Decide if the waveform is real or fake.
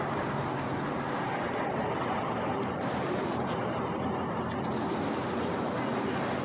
real